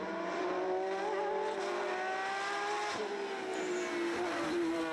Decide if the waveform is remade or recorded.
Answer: recorded